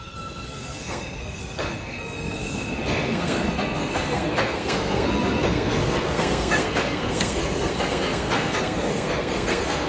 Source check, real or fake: fake